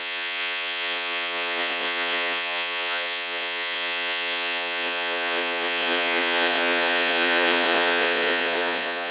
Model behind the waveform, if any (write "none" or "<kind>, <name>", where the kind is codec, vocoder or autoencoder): vocoder, Vocos